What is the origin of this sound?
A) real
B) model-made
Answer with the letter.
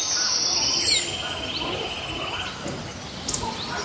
A